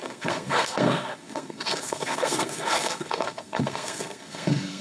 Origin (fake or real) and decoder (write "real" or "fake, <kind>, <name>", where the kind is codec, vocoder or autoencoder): fake, codec, SNAC